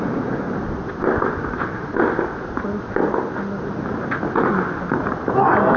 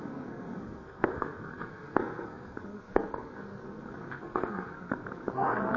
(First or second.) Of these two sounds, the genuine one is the first